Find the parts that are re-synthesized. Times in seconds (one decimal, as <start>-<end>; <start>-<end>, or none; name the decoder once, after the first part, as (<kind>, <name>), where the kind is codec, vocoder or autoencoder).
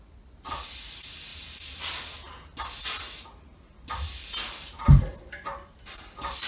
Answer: 0.0-1.3 (vocoder, BigVGAN v2); 5.2-6.5